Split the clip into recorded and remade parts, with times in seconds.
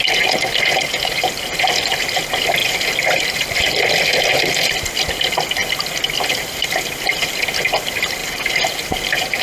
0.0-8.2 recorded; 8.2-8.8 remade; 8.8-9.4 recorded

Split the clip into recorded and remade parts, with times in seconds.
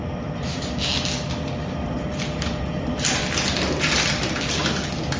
0.0-0.9 remade; 0.9-2.2 recorded; 2.2-3.2 remade; 3.2-5.2 recorded